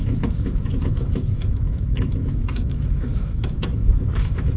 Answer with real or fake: fake